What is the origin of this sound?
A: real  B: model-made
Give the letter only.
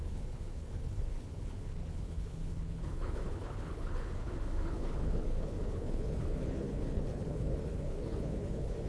B